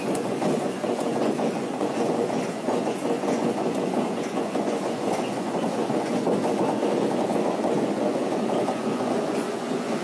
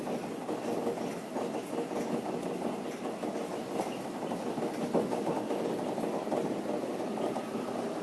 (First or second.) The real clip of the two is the second